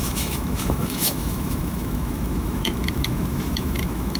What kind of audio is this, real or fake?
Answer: fake